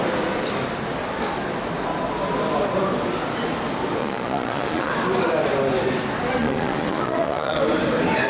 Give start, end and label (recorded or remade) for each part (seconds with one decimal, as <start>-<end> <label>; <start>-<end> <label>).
0.0-4.0 recorded; 4.0-4.9 remade; 4.9-6.4 recorded; 6.4-7.6 remade; 7.6-8.3 recorded